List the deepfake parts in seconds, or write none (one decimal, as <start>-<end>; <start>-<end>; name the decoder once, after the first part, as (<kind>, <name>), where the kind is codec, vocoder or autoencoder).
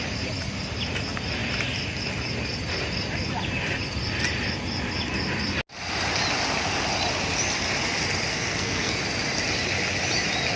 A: 8.3-9.0 (codec, SNAC)